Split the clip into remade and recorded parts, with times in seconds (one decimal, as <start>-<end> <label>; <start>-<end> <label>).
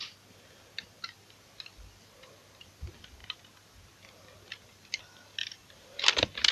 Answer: 0.0-5.4 recorded; 5.4-6.0 remade; 6.0-6.5 recorded